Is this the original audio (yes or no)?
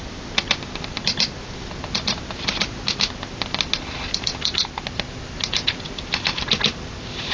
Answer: yes